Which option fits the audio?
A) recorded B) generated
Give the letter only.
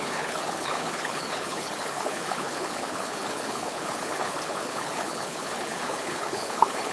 B